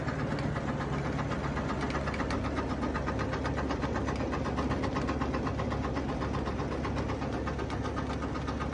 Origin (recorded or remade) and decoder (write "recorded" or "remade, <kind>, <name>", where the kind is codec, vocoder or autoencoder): recorded